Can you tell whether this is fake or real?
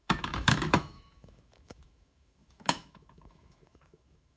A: fake